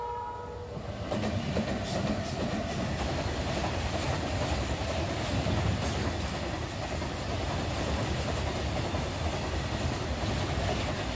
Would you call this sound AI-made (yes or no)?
no